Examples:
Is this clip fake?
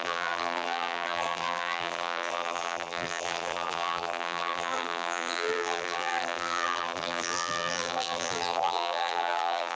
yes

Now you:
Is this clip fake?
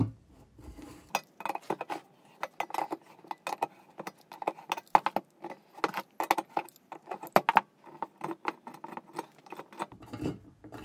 no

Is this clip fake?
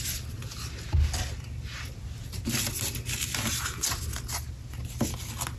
no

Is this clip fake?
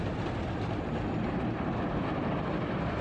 no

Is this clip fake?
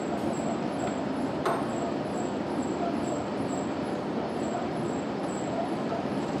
yes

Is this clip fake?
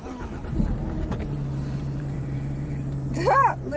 yes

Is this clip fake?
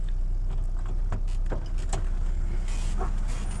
no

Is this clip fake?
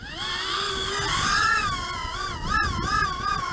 no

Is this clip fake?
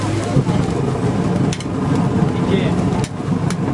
no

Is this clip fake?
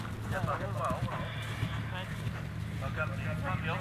no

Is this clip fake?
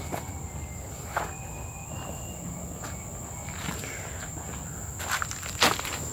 no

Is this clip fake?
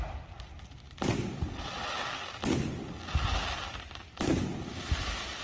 no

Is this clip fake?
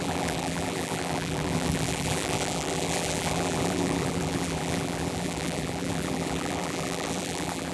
yes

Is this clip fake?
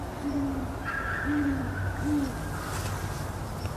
no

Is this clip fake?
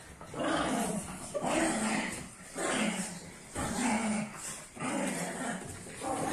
no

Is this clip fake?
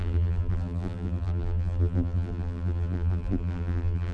yes